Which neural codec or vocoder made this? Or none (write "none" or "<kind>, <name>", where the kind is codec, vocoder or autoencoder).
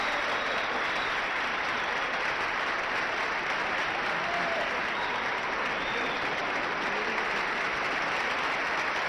vocoder, BigVGAN v2